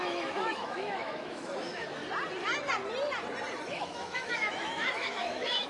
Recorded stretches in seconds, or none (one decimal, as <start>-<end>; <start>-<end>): 2.0-3.6